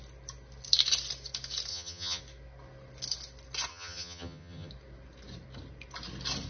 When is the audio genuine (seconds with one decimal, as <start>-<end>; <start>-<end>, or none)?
0.0-1.7; 2.2-3.7; 4.7-6.5